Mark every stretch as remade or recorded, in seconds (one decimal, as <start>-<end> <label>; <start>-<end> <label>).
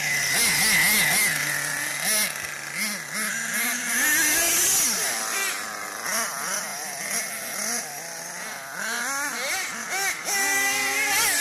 0.0-11.4 recorded